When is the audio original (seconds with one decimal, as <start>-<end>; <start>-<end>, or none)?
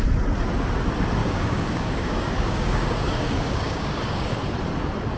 0.0-1.2; 4.3-5.2